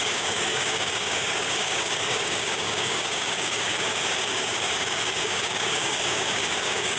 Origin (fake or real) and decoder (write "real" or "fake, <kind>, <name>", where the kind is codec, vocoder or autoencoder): fake, codec, DAC